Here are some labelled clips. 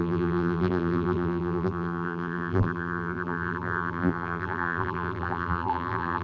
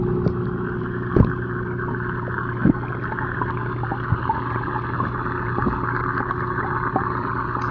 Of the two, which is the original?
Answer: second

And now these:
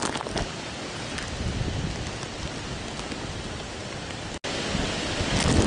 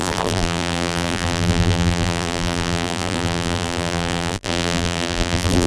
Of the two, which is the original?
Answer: first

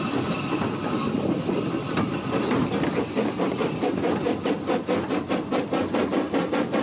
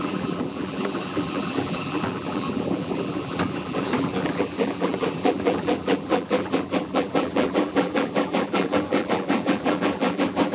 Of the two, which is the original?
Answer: first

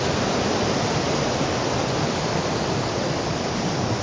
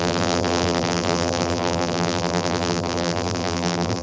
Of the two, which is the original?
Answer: first